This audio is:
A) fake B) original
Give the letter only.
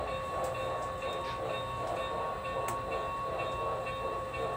B